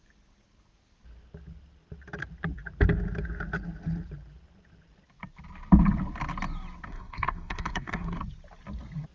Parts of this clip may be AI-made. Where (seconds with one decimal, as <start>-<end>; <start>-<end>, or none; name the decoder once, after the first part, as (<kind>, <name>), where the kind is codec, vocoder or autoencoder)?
6.9-8.2 (codec, SNAC)